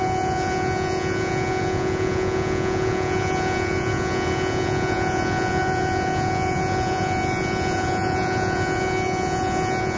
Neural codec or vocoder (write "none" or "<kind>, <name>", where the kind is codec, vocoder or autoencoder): vocoder, Vocos